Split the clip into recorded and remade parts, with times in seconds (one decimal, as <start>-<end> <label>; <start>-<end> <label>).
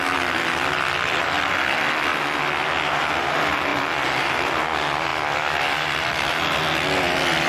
0.0-7.5 recorded